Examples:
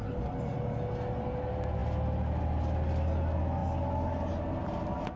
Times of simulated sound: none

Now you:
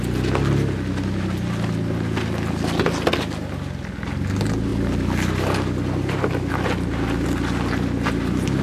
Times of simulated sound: none

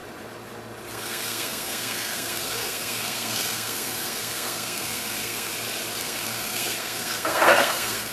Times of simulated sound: 0.9-5.5; 6.0-8.1